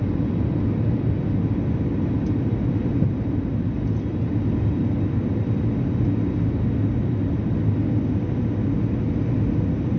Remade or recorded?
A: recorded